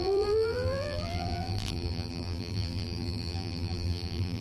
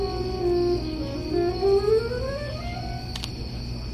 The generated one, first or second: first